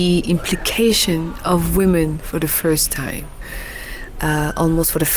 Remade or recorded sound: recorded